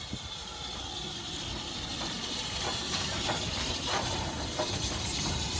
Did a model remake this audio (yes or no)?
yes